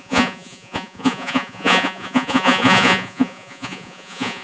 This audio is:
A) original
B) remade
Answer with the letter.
B